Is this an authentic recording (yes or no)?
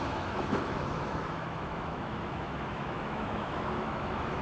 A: no